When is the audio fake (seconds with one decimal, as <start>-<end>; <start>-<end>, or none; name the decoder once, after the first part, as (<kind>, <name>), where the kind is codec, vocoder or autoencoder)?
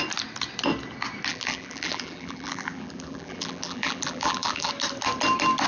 1.3-4.7 (vocoder, BigVGAN v2)